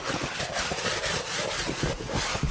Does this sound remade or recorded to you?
recorded